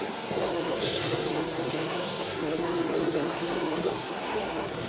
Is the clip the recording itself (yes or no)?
no